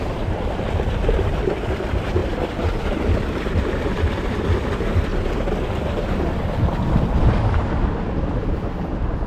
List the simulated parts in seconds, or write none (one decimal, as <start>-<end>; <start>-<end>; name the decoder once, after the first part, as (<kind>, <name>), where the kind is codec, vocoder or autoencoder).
0.0-2.2 (vocoder, BigVGAN v2); 2.8-5.1; 7.1-9.3